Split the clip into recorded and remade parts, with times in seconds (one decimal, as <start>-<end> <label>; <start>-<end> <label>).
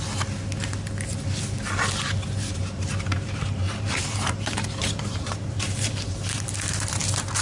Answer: 0.0-2.6 recorded; 2.6-7.0 remade; 7.0-7.4 recorded